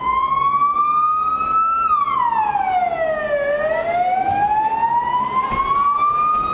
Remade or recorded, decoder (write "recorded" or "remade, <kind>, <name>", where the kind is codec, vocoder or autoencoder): recorded